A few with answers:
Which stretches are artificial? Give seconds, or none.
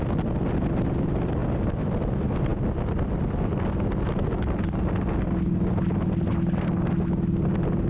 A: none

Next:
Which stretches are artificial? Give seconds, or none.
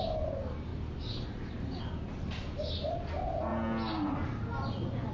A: none